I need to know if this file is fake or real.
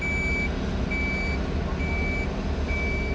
real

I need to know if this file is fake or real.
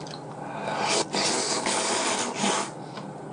real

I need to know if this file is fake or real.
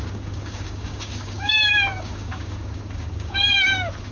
fake